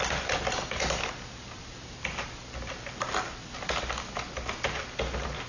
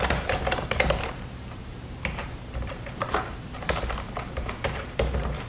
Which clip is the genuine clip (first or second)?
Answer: first